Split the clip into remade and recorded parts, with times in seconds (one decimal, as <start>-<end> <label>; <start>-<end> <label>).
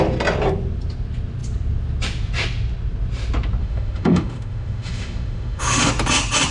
0.0-3.6 recorded; 3.6-5.9 remade; 5.9-6.5 recorded